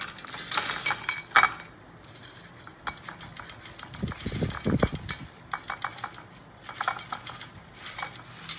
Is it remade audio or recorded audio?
recorded